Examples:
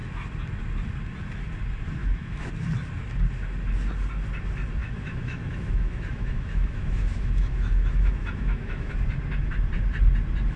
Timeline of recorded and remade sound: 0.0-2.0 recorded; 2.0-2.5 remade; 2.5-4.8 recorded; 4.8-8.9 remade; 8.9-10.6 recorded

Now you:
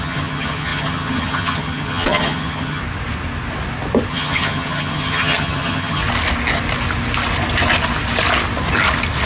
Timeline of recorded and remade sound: 0.0-2.8 remade; 2.8-4.1 recorded; 4.1-6.0 remade; 6.0-9.3 recorded

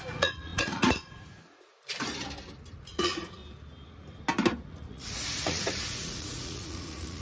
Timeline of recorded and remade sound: 0.0-1.9 remade; 1.9-2.7 recorded; 2.7-3.4 remade; 3.4-4.7 recorded; 4.7-7.2 remade

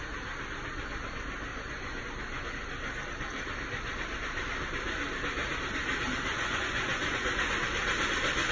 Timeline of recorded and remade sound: 0.0-1.5 recorded; 1.5-2.0 remade; 2.0-6.3 recorded; 6.3-7.5 remade; 7.5-8.5 recorded

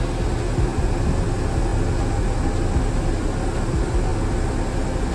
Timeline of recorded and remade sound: 0.0-5.1 recorded

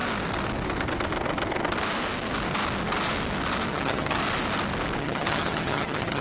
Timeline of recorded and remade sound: 0.0-3.7 recorded; 3.7-4.2 remade; 4.2-5.0 recorded; 5.0-6.2 remade

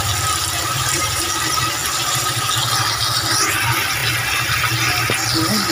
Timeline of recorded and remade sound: 0.0-0.6 recorded; 0.6-1.3 remade; 1.3-1.8 recorded; 1.8-2.5 remade; 2.5-5.7 recorded

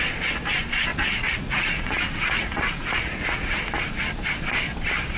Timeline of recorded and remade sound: 0.0-0.9 recorded; 0.9-3.6 remade; 3.6-5.2 recorded